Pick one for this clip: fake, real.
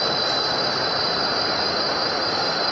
real